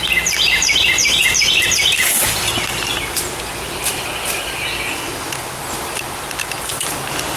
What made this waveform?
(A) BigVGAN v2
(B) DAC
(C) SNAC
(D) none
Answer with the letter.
A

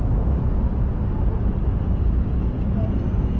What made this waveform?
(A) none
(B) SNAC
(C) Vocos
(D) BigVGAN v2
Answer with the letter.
A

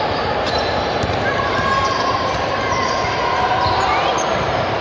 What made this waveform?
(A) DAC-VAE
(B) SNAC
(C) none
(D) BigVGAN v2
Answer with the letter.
D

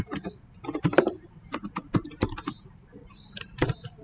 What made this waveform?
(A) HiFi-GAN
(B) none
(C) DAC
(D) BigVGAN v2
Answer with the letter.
D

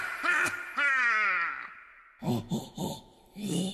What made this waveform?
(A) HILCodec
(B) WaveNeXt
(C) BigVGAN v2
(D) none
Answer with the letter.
D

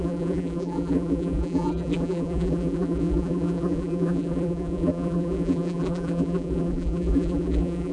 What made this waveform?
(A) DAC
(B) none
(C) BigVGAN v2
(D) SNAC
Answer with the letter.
C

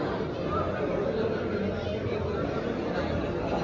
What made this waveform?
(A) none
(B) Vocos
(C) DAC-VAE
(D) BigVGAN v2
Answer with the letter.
A